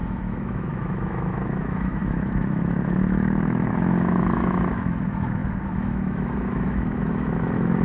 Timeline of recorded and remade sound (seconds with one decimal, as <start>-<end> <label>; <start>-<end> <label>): 0.0-7.8 remade